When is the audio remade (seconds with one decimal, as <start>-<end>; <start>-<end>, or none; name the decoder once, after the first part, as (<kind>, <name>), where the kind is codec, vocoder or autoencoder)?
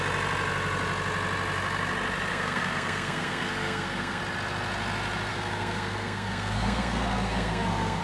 2.3-4.2 (codec, SNAC); 5.3-8.0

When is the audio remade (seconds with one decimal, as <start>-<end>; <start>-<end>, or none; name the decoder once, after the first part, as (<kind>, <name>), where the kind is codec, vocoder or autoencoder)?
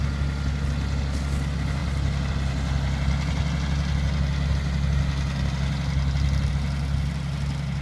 none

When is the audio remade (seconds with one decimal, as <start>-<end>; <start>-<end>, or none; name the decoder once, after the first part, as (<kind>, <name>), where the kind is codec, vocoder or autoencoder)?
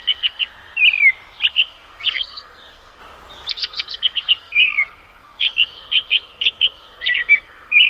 0.0-0.5 (codec, SNAC); 1.5-3.0; 3.5-7.9